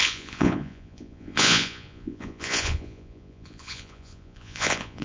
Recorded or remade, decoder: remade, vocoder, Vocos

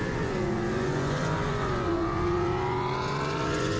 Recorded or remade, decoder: remade, vocoder, Vocos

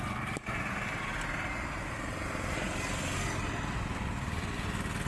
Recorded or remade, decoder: recorded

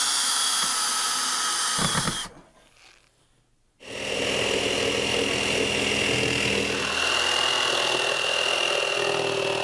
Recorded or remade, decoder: recorded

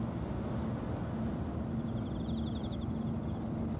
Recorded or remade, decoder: recorded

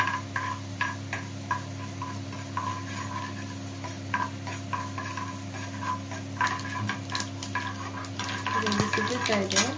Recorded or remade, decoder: recorded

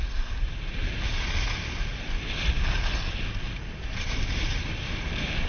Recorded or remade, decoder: recorded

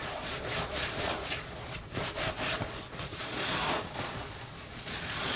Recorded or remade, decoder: remade, vocoder, Vocos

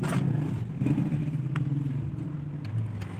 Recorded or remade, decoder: recorded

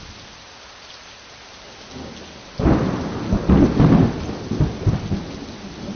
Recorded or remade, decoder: recorded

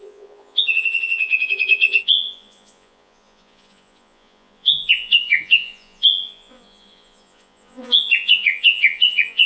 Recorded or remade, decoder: remade, vocoder, Vocos